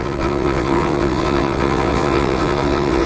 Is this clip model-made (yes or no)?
yes